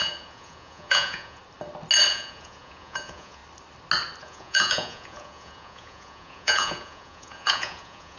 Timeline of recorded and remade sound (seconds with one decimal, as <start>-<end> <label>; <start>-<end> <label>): 0.0-1.4 remade; 1.4-2.1 recorded; 2.1-3.4 remade; 3.4-4.2 recorded; 4.2-8.2 remade